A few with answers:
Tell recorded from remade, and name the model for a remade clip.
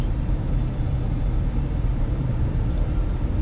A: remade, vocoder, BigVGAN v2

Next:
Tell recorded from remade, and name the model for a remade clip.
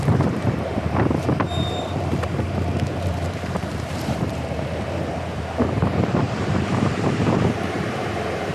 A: remade, vocoder, BigVGAN v2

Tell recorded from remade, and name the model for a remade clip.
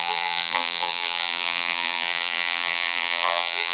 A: remade, vocoder, BigVGAN v2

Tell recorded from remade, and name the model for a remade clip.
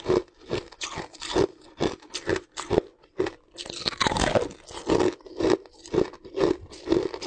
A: recorded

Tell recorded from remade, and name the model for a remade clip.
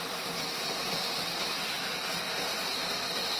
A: recorded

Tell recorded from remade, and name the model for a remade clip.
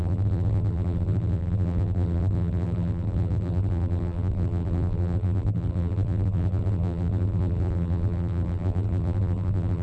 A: remade, vocoder, BigVGAN v2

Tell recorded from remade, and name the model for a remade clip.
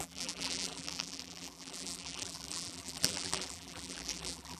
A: remade, vocoder, BigVGAN v2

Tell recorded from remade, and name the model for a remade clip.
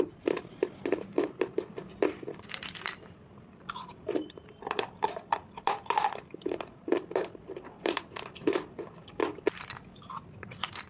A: remade, vocoder, BigVGAN v2